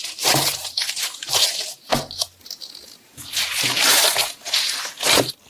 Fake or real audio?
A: real